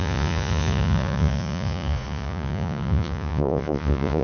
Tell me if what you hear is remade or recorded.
remade